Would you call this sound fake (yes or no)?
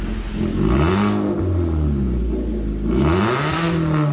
no